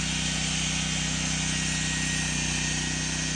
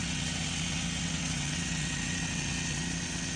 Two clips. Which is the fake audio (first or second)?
second